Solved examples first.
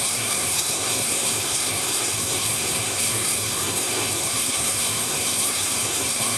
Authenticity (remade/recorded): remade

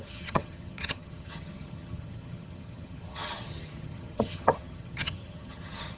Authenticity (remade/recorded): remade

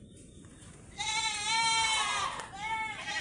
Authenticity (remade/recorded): remade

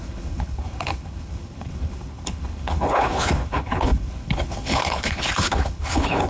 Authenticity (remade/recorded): remade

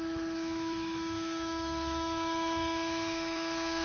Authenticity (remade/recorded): remade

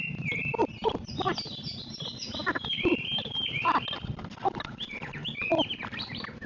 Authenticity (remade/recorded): remade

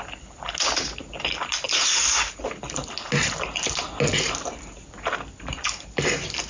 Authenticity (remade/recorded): recorded